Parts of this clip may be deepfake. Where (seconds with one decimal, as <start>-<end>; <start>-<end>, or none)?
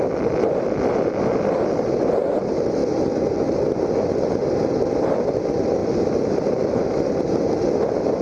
0.0-2.8; 5.0-8.2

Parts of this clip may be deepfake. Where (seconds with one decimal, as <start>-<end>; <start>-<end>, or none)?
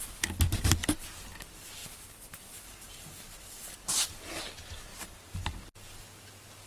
1.8-3.7; 4.9-5.5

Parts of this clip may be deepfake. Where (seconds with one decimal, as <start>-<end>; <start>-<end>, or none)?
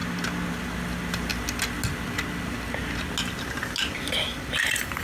none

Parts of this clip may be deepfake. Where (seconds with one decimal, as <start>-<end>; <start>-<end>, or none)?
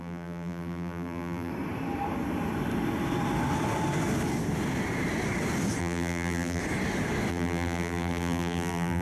0.0-1.5; 5.8-6.6; 7.3-9.0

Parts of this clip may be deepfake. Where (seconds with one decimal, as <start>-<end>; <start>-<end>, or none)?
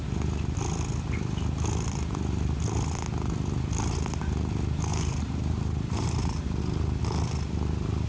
4.9-6.6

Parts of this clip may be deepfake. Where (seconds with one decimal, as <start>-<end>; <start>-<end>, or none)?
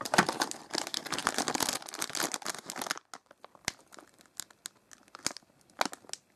none